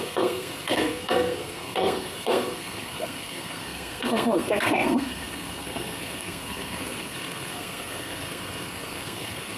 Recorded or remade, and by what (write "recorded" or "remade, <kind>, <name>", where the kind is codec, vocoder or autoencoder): remade, codec, SNAC